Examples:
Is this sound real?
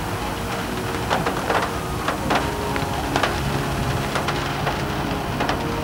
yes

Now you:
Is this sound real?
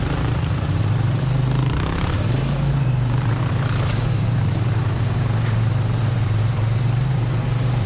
no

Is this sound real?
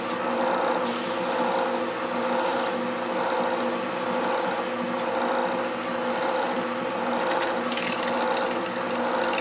yes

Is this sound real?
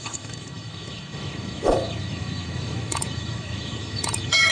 no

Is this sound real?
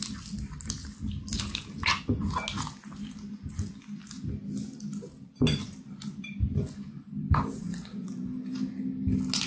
yes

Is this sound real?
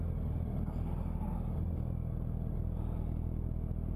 yes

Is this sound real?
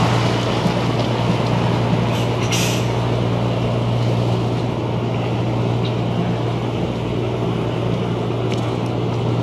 yes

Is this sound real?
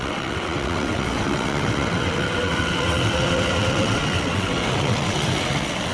no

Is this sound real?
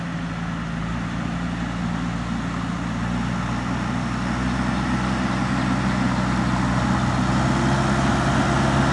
yes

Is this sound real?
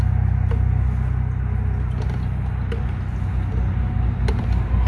yes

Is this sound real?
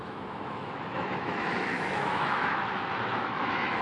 no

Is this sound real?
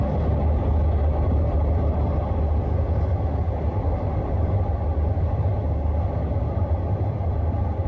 yes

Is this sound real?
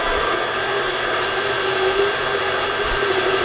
yes